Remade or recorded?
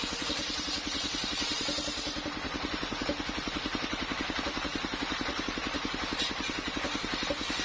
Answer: remade